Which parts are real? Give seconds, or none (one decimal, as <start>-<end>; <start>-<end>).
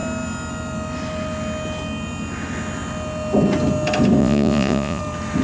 0.0-4.2; 5.0-5.4